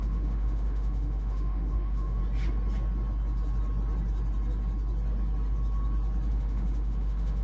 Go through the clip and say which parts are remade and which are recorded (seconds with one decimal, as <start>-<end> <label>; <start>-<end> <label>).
0.0-2.2 remade; 2.2-6.3 recorded; 6.3-7.4 remade